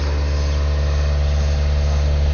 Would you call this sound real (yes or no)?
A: yes